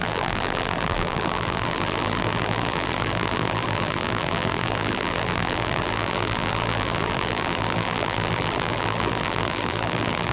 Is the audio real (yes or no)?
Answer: no